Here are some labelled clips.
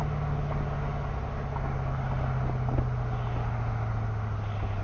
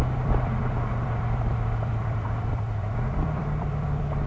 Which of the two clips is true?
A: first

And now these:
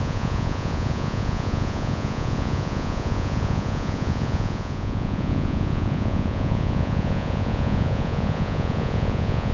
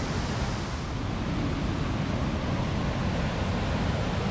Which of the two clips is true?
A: second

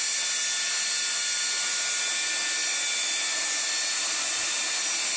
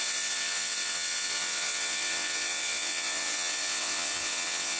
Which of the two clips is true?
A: first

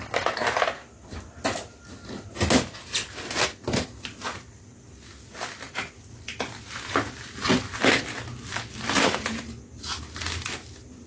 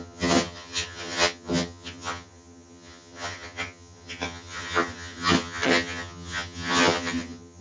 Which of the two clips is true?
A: first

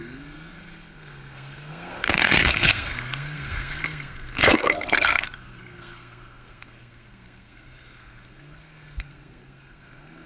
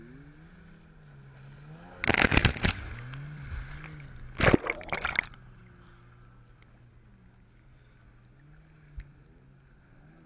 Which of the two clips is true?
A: second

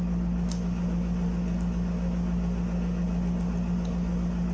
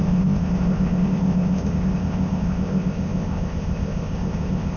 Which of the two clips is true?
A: first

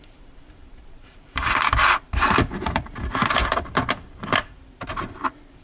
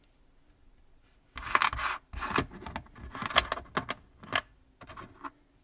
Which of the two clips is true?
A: second